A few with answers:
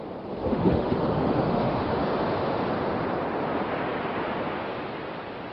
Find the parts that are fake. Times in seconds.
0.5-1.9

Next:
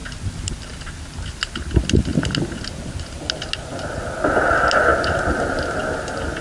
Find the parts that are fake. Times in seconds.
0.0-1.1

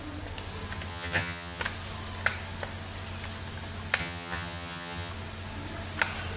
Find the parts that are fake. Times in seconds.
0.9-1.6; 4.0-5.1

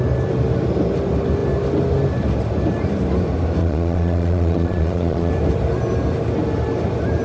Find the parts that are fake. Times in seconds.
3.6-5.3